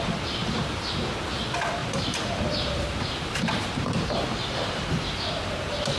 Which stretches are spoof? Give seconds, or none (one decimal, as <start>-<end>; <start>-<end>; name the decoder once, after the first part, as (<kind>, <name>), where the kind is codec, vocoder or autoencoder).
0.4-0.9 (vocoder, BigVGAN v2)